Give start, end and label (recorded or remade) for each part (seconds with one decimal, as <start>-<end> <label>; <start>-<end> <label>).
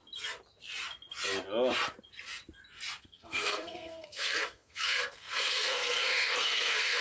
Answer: 0.0-3.0 recorded; 3.0-7.0 remade